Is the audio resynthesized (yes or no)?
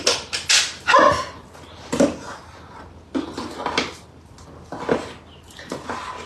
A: no